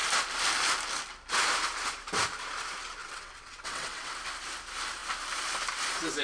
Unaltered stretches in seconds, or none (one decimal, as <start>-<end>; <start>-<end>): 0.0-3.0; 4.2-6.2